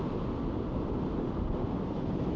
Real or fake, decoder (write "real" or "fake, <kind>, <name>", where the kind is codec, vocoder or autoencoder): real